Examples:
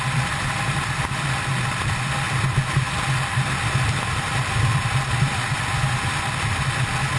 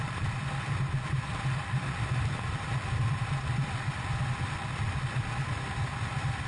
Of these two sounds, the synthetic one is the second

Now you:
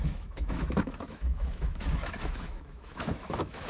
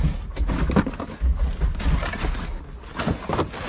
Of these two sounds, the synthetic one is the first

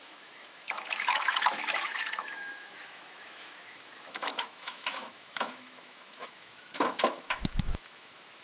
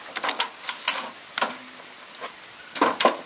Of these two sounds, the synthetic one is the first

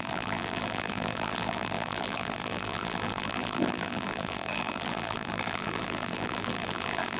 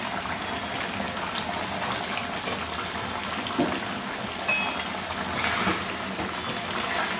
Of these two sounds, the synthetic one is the first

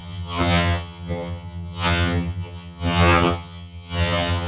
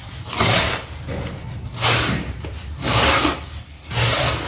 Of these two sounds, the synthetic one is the first